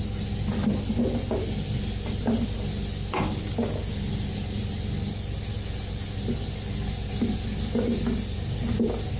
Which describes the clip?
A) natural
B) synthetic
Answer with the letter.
A